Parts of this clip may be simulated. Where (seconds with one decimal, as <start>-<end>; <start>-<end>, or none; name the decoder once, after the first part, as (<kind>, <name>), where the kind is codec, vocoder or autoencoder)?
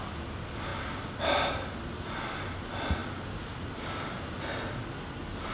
none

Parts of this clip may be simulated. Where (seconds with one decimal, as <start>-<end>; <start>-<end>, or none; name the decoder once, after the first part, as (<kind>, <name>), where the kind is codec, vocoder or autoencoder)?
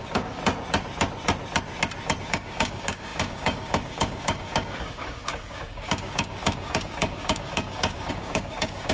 0.0-0.4 (codec, DAC); 2.2-8.9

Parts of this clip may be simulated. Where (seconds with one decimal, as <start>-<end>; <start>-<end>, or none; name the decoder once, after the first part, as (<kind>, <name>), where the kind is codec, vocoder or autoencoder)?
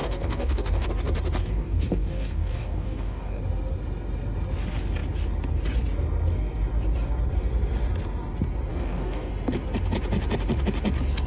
0.0-0.9 (codec, DAC); 1.4-3.4; 8.7-9.3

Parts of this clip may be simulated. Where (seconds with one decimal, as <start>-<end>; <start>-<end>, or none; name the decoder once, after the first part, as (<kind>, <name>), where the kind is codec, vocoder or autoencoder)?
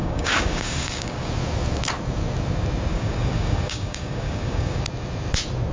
0.0-1.3 (codec, DAC); 2.9-4.8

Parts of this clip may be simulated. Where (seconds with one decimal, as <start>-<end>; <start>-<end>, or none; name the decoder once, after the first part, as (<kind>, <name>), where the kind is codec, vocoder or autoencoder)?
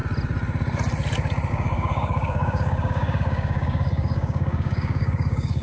1.5-5.6 (codec, DAC)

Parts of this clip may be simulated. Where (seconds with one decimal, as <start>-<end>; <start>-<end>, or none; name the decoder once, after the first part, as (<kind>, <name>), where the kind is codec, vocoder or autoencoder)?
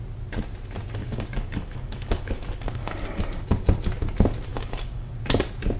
1.0-3.2 (codec, DAC); 4.5-5.1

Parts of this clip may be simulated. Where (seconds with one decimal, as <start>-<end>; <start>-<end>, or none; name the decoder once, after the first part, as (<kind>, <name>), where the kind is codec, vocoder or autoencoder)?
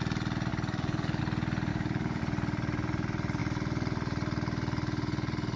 0.5-1.2 (codec, DAC); 1.7-2.2